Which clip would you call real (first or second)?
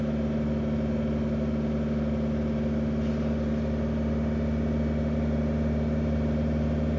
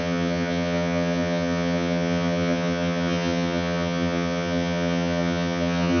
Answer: first